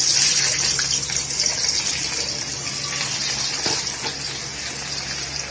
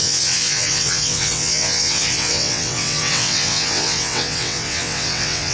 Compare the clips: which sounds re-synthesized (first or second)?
second